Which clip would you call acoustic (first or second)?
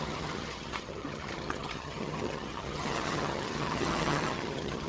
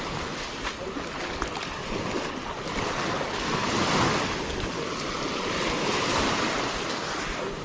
second